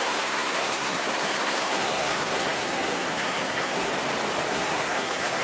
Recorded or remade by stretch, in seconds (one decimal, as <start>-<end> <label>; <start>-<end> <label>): 0.0-3.9 remade; 3.9-4.5 recorded; 4.5-5.4 remade

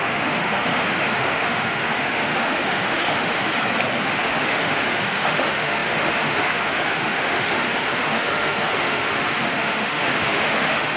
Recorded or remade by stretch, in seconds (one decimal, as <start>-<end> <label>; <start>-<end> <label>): 0.0-3.5 remade; 3.5-4.0 recorded; 4.0-11.0 remade

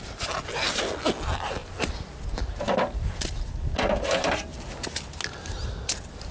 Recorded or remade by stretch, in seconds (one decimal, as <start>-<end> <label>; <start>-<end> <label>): 0.0-6.3 recorded

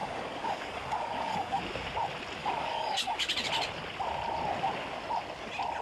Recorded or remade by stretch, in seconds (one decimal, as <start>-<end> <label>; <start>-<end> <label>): 0.0-1.6 remade; 1.6-2.4 recorded; 2.4-3.3 remade; 3.3-5.8 recorded

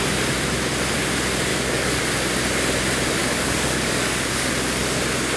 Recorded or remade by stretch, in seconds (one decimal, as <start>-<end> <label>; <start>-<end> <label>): 0.0-1.5 recorded; 1.5-2.0 remade; 2.0-3.2 recorded; 3.2-4.5 remade; 4.5-5.4 recorded